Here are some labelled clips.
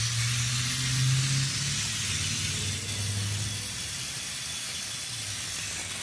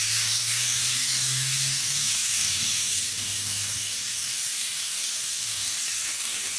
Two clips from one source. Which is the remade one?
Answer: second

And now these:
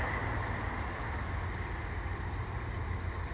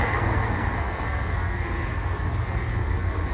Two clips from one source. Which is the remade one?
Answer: second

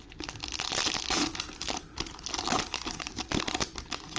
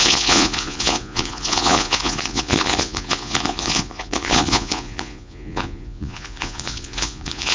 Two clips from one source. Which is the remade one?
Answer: second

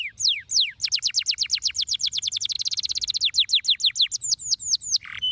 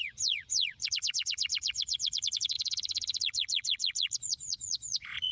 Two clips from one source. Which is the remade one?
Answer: second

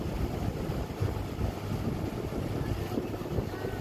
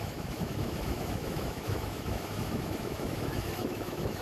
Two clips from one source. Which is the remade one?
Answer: second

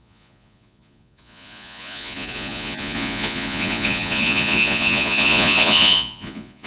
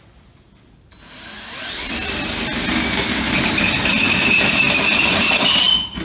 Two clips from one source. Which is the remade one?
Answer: first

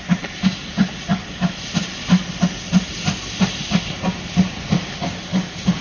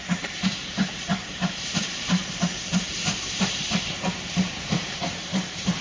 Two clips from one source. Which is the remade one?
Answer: second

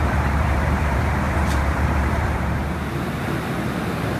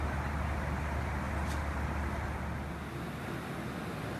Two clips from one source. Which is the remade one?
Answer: first